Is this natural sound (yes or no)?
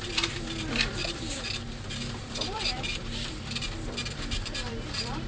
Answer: no